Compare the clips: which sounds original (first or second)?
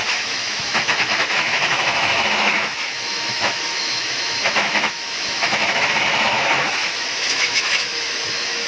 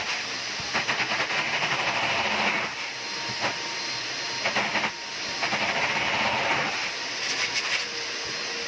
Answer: second